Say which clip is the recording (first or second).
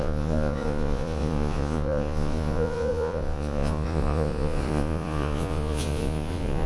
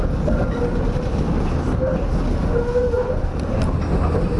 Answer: second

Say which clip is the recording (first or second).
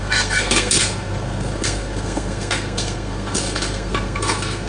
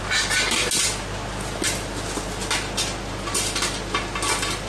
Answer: second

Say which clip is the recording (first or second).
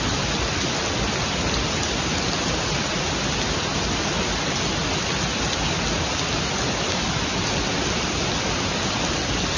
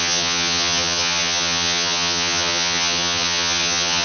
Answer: first